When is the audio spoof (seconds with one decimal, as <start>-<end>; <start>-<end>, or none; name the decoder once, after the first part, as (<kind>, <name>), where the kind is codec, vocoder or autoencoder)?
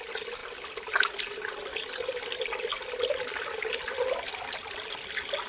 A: none